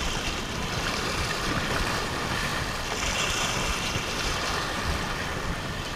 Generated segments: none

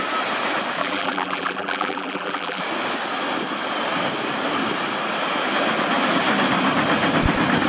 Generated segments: 0.8-2.6 (vocoder, BigVGAN v2)

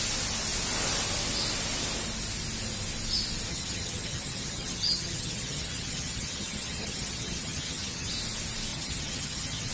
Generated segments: 3.5-8.1 (vocoder, HiFi-GAN); 8.7-9.7

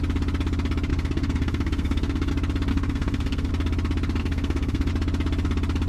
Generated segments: 0.9-2.3 (codec, SNAC); 2.7-3.5; 4.2-4.9

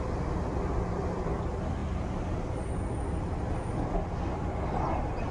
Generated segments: none